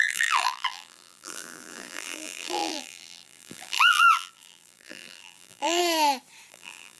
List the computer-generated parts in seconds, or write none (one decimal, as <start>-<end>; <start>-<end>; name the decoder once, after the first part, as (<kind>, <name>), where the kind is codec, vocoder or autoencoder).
0.0-5.8 (vocoder, BigVGAN v2); 6.5-7.0

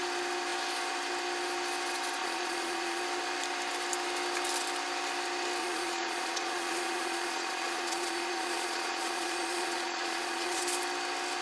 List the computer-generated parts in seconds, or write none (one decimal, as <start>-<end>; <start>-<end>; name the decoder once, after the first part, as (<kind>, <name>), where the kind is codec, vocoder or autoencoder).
2.2-3.0 (vocoder, Vocos); 5.6-10.6

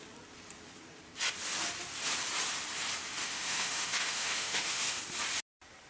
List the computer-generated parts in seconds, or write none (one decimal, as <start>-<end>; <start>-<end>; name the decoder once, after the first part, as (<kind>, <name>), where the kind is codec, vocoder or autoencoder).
3.2-5.0 (autoencoder, DAC-VAE)

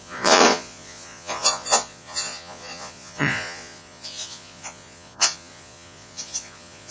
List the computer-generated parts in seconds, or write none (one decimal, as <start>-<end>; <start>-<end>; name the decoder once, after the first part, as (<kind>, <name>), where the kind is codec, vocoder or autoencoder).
0.0-6.9 (vocoder, Vocos)

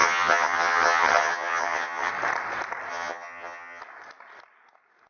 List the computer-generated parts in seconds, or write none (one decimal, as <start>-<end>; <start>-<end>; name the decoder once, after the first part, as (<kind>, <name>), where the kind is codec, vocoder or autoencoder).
0.0-2.1 (vocoder, HiFi-GAN); 2.9-3.8

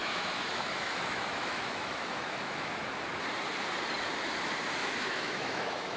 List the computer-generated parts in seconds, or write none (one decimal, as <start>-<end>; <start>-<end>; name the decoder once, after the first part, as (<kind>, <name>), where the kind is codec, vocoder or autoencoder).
0.0-2.7 (autoencoder, DAC-VAE); 4.8-6.0